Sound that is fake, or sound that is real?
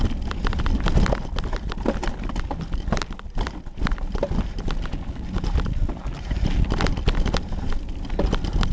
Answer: real